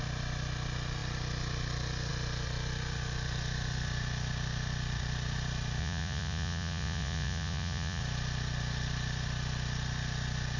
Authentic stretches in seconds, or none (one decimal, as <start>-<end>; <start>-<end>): 0.0-5.8; 8.0-10.6